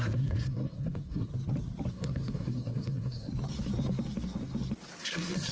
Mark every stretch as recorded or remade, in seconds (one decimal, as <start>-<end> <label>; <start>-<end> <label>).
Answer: 0.0-1.3 remade; 1.3-1.9 recorded; 1.9-3.3 remade; 3.3-5.0 recorded; 5.0-5.5 remade